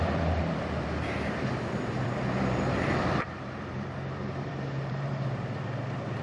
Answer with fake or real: fake